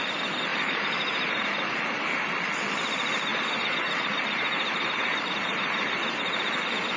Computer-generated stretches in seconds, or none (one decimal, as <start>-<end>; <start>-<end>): 0.5-2.3; 3.3-6.4